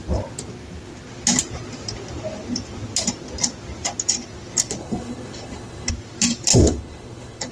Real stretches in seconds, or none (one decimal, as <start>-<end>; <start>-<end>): 0.0-4.8; 5.9-6.5